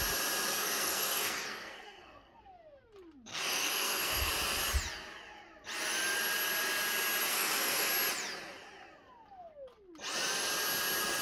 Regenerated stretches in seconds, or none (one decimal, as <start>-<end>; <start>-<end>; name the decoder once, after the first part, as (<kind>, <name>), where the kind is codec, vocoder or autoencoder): 0.5-2.4 (codec, SNAC); 3.3-4.3; 7.3-7.9